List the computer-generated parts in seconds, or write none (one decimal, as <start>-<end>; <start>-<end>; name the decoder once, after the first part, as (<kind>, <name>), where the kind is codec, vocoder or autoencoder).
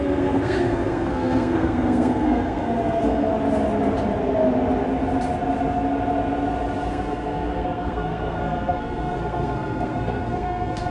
0.0-3.3 (codec, SNAC); 6.9-10.9